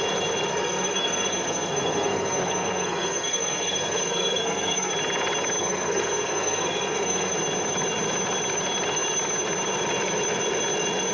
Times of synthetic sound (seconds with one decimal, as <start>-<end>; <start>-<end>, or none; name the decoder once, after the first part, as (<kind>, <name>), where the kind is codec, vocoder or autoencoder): 0.5-4.9 (codec, SNAC); 5.6-7.3